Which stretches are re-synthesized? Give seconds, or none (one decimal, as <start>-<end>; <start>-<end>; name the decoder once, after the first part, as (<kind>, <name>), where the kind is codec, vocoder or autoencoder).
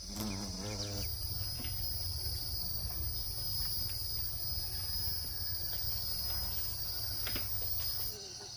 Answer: none